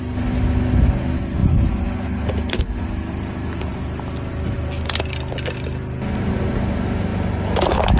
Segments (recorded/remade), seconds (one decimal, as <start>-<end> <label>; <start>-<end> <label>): 0.0-8.0 recorded